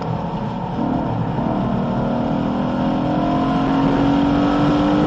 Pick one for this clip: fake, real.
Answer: real